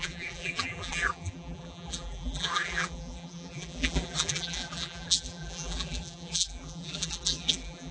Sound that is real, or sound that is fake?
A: fake